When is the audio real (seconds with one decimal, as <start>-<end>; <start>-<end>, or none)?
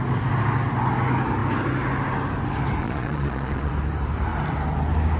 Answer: 0.0-2.8; 3.7-5.2